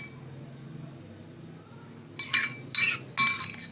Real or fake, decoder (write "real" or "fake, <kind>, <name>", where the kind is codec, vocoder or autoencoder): real